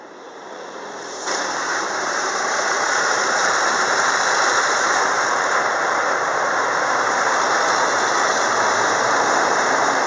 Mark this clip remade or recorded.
remade